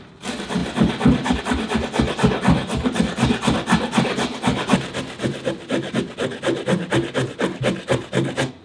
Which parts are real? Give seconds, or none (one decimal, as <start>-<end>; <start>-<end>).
0.0-8.6